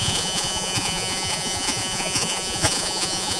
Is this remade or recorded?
remade